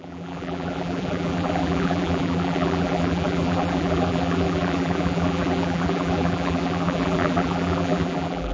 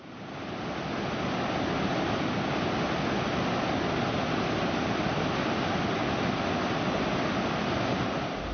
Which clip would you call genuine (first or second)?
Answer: second